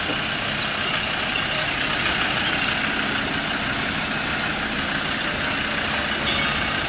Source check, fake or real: real